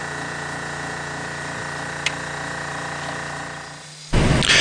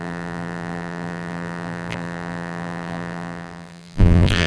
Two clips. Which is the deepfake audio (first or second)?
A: second